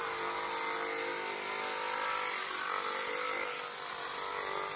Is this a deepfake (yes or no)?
no